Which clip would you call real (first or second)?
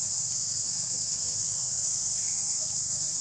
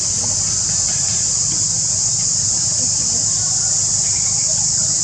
second